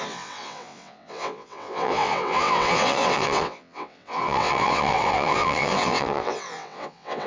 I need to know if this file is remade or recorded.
remade